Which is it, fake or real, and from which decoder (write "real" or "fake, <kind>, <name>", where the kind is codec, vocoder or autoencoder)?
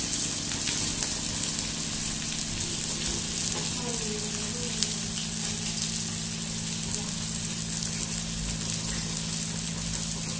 real